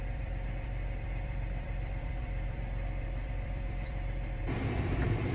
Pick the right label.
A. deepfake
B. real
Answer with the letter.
A